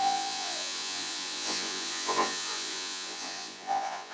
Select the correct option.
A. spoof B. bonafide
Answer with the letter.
A